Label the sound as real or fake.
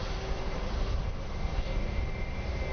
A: real